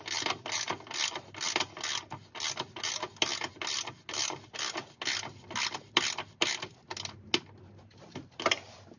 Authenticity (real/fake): real